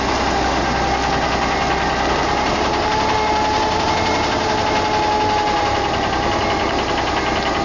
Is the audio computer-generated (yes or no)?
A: no